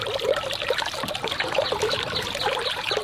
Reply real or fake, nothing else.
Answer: real